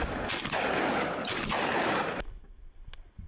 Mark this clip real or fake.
real